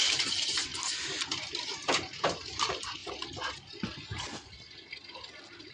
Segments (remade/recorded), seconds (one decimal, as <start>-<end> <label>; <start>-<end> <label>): 0.0-0.7 remade; 0.7-1.9 recorded; 1.9-3.0 remade; 3.0-5.7 recorded